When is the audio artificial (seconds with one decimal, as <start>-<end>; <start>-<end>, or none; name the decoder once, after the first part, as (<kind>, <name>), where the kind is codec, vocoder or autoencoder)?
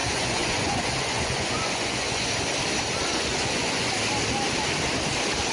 0.0-2.3 (vocoder, Vocos); 3.1-3.9